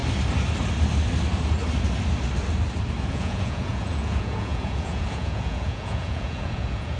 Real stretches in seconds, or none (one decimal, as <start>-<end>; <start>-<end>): 0.0-3.1